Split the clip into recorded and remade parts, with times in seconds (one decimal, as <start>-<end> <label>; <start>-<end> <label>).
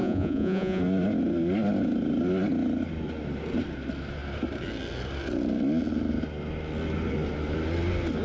0.0-0.8 remade; 0.8-8.2 recorded